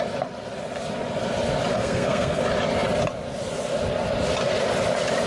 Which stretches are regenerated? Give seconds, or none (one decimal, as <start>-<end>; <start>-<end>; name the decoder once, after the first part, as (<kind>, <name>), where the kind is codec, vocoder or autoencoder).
1.7-2.4 (codec, SNAC)